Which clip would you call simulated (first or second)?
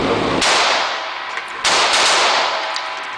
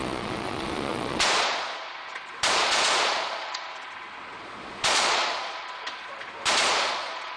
second